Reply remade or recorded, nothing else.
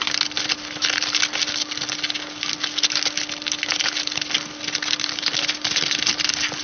recorded